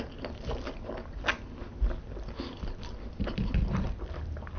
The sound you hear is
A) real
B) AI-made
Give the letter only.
A